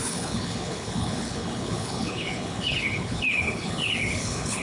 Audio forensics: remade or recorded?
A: remade